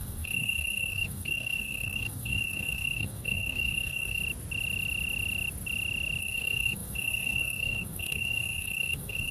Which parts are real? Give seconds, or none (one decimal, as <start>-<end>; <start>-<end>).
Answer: 4.2-6.2